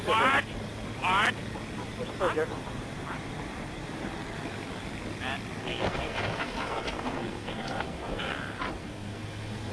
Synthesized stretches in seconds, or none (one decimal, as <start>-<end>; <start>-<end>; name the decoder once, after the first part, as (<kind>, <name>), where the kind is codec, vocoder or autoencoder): 5.6-8.4 (codec, SNAC); 8.8-9.7